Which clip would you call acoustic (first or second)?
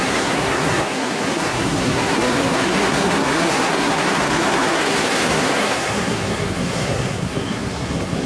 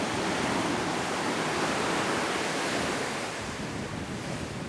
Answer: second